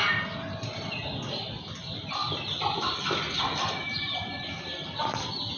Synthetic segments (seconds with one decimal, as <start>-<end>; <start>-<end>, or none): 2.2-5.6